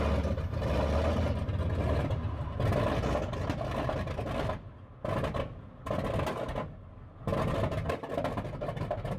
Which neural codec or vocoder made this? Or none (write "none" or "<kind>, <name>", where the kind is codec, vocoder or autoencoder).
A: none